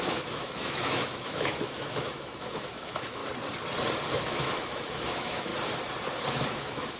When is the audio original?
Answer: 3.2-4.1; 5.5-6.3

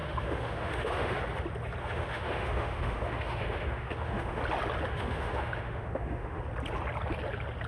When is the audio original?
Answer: 1.2-1.8; 4.4-4.9; 6.4-7.7

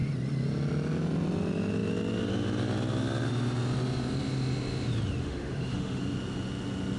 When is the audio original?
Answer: 0.0-5.2; 6.0-7.0